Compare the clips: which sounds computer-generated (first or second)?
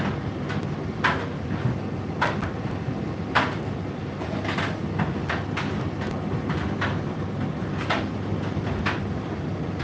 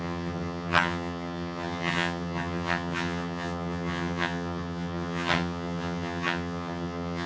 second